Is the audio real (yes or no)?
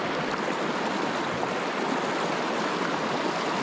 yes